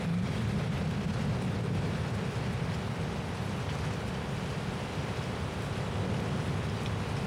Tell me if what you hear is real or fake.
real